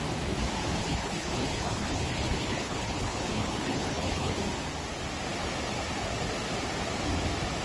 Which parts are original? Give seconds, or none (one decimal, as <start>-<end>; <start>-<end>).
0.0-0.8; 4.4-7.6